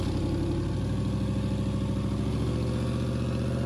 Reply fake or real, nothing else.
real